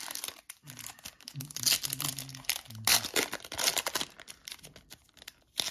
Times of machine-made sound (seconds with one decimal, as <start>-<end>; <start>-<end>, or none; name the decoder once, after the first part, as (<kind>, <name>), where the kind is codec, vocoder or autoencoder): none

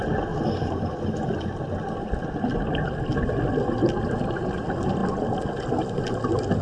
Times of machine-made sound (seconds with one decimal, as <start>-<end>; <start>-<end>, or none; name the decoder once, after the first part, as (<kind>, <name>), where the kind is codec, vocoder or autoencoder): none

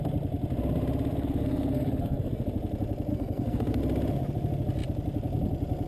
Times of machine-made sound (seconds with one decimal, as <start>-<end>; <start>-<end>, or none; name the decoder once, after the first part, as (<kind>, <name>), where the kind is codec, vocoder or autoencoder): 1.1-2.4 (codec, SNAC); 3.1-3.8

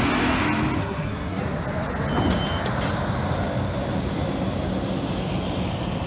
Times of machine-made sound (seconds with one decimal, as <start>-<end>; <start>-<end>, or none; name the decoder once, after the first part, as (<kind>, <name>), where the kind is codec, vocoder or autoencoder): 0.8-1.4 (codec, SNAC)

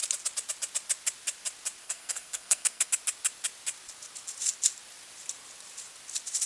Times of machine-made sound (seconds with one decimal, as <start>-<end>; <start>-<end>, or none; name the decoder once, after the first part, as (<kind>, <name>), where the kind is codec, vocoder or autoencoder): 1.8-2.9 (codec, SNAC)